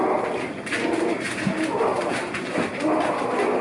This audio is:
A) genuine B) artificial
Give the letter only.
A